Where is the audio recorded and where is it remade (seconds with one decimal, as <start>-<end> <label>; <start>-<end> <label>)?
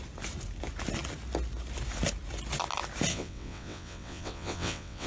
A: 0.0-3.1 recorded; 3.1-5.1 remade